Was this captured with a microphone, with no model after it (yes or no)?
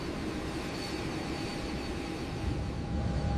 yes